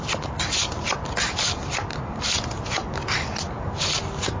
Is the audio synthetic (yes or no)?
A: no